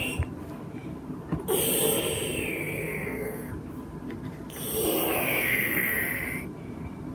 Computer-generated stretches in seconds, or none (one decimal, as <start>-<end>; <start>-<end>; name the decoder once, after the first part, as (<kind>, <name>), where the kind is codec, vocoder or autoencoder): 2.6-3.5 (codec, SNAC); 5.3-5.9

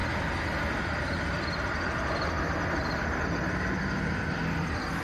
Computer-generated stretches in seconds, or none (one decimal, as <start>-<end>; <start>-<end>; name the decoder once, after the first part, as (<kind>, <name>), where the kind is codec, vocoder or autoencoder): none

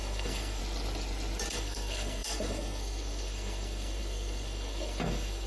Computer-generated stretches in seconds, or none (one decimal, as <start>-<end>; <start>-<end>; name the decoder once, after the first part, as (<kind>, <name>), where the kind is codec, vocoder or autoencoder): 0.0-0.6 (codec, SNAC); 1.5-5.5